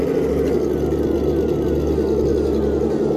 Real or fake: real